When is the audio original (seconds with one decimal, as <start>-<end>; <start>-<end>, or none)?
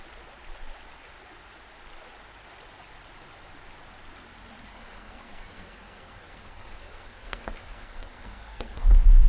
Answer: 0.0-4.7